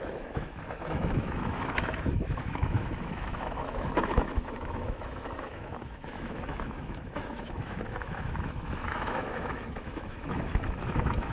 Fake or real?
fake